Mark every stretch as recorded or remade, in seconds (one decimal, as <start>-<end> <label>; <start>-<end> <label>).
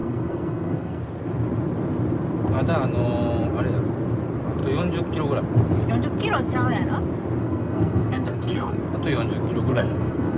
0.0-1.0 remade; 1.0-7.4 recorded; 7.4-8.8 remade; 8.8-9.7 recorded; 9.7-10.4 remade